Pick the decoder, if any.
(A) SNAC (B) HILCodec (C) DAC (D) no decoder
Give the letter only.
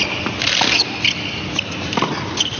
D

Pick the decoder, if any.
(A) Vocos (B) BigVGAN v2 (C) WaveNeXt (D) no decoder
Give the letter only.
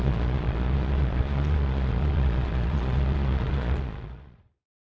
A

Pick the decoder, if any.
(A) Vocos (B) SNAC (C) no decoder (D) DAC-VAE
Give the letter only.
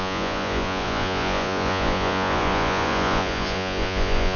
A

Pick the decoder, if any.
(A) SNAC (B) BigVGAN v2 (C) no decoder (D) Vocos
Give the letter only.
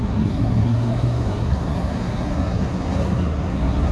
A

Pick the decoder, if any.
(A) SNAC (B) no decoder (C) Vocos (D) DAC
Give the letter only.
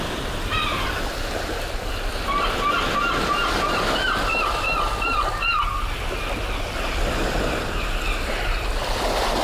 B